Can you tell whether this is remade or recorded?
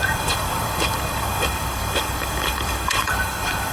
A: remade